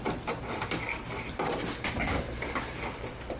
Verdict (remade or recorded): remade